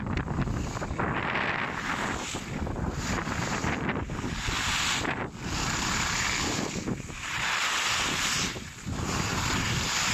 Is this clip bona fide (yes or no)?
yes